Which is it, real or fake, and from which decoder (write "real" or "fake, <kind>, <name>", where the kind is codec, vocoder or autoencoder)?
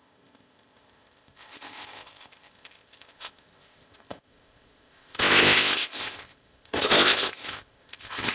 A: fake, codec, ZipCodec